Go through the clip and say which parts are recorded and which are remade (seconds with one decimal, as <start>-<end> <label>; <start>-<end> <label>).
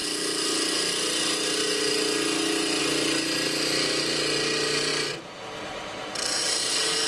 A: 0.0-4.9 recorded; 4.9-5.4 remade; 5.4-7.1 recorded